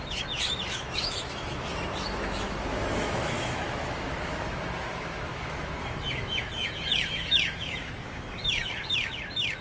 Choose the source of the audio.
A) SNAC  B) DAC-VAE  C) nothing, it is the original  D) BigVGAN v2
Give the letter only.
B